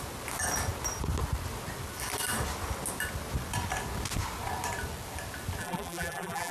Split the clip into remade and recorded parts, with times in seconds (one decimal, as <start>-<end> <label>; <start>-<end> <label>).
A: 0.0-5.6 recorded; 5.6-6.5 remade